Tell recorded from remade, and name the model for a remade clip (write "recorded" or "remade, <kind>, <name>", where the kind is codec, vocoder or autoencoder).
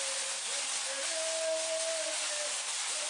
recorded